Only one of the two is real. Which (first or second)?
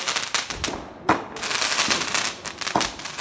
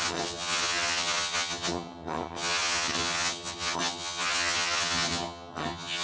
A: first